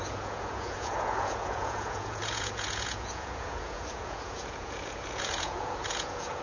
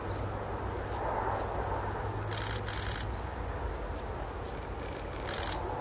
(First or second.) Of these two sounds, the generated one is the first